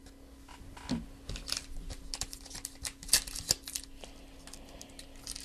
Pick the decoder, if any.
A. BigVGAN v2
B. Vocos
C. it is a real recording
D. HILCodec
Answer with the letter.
C